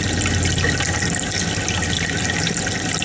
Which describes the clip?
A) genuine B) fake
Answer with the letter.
A